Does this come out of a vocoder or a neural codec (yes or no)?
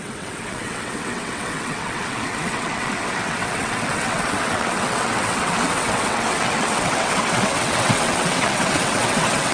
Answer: yes